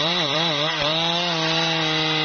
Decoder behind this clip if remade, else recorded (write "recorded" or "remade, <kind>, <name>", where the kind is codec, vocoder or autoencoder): remade, vocoder, BigVGAN v2